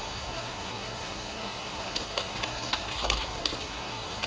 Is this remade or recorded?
remade